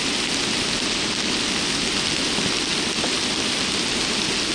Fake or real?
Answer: real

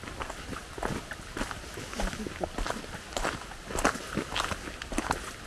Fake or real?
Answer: real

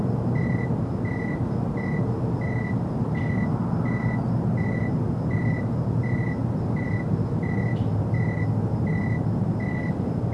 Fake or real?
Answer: real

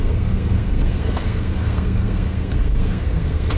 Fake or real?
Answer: fake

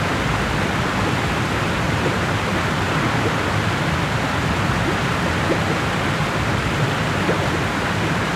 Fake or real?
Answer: real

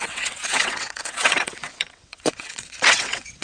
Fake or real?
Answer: fake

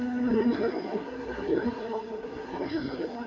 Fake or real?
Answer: fake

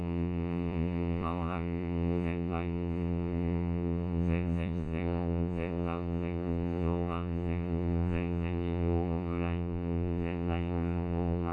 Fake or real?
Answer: fake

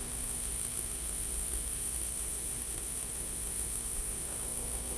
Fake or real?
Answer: fake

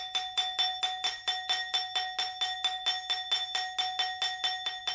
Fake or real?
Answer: real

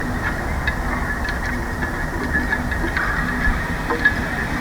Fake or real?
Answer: real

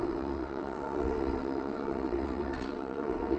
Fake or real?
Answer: fake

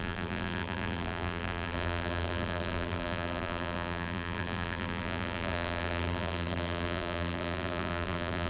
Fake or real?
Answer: fake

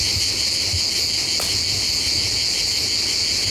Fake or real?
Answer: real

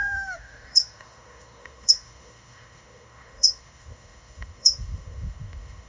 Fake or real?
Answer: fake